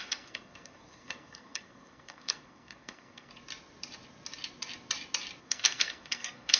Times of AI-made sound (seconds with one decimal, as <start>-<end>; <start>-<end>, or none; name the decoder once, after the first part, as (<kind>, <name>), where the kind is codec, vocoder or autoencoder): 0.0-3.3 (codec, SNAC); 5.4-6.6